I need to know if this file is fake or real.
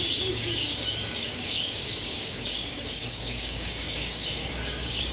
fake